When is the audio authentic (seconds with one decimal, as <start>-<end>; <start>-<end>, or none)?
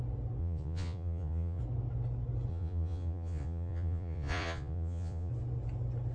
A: 0.0-0.4; 1.6-2.5; 5.3-6.1